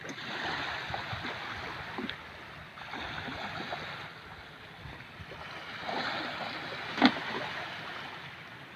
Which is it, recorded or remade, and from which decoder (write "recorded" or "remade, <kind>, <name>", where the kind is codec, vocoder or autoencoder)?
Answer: recorded